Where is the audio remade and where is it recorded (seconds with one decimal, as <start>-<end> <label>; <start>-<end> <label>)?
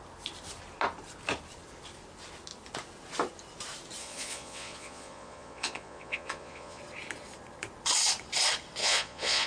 0.0-4.0 recorded; 4.0-6.8 remade; 6.8-8.8 recorded; 8.8-9.5 remade